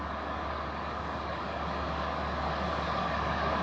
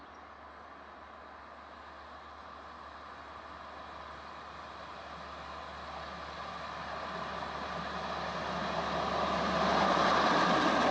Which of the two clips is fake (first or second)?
first